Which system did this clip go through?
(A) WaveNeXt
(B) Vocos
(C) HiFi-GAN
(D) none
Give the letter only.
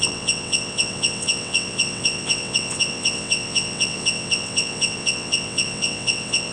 A